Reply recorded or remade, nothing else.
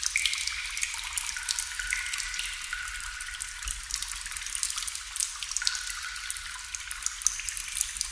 recorded